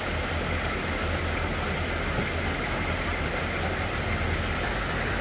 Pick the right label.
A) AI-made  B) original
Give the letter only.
B